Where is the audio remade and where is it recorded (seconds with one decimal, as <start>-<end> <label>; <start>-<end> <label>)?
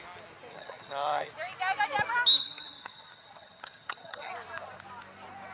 0.0-0.5 recorded; 0.5-1.3 remade; 1.3-2.4 recorded; 2.4-4.3 remade; 4.3-5.5 recorded